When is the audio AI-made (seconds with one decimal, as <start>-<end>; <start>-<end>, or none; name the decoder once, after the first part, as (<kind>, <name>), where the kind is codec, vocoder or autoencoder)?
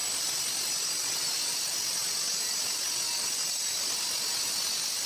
1.1-2.0 (vocoder, BigVGAN v2)